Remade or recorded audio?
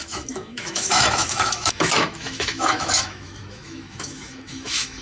remade